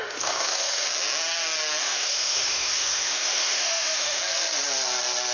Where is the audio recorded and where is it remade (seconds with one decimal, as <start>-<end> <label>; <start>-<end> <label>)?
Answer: 0.0-0.9 remade; 0.9-1.8 recorded; 1.8-4.2 remade; 4.2-5.3 recorded